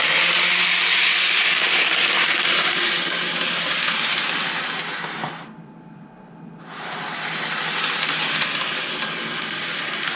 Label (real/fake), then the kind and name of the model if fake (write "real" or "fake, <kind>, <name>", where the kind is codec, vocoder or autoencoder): real